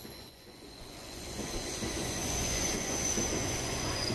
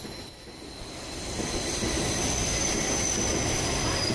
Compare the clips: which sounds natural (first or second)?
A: second